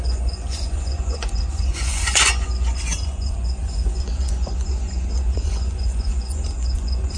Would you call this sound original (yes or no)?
no